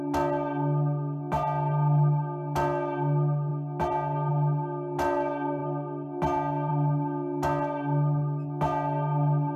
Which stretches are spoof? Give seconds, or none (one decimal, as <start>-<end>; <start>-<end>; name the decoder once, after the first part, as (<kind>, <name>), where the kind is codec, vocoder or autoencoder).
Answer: none